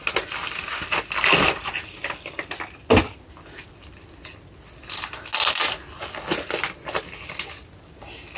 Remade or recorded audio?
recorded